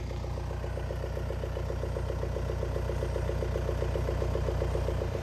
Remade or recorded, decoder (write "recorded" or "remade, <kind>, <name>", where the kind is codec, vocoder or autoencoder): recorded